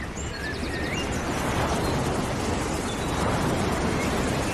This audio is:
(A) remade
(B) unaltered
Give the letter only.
B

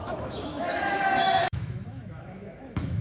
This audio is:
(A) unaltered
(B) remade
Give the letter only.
B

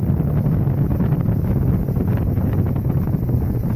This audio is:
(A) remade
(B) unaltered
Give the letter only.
B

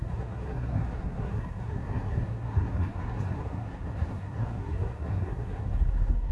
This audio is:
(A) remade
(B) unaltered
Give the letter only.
A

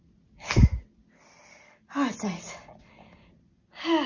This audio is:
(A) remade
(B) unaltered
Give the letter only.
B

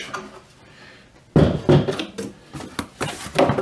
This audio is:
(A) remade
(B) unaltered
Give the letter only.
B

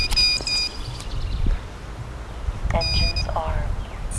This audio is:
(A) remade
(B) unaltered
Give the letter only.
B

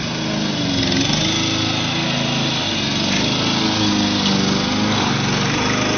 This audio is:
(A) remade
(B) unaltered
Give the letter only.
B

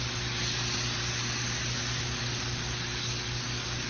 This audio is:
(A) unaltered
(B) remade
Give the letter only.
A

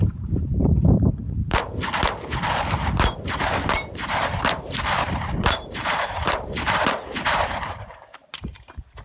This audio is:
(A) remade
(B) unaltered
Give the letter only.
A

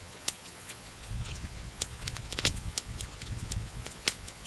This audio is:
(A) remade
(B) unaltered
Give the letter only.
A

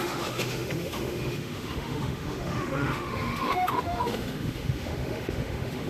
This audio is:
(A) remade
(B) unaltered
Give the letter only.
A